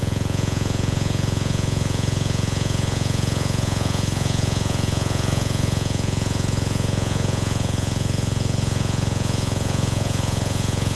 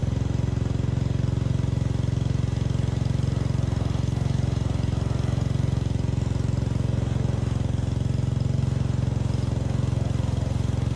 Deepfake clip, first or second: first